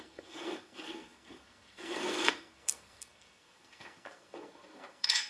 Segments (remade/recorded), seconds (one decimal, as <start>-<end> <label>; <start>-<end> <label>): 0.0-5.3 remade